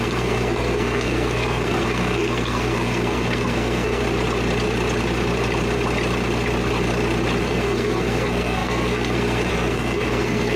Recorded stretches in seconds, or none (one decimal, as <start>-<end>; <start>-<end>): 4.0-7.4